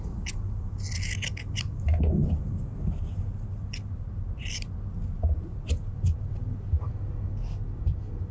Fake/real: real